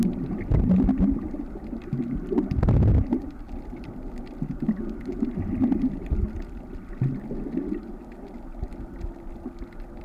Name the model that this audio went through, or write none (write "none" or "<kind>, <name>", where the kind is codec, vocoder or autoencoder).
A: none